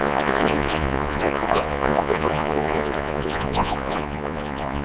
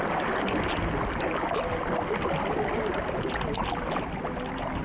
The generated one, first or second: first